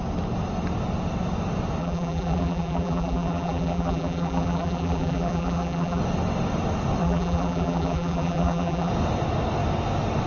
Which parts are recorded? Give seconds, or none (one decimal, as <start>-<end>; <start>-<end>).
0.0-1.8; 6.0-7.0; 8.9-10.3